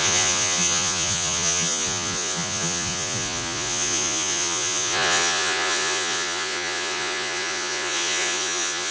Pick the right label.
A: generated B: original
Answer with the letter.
A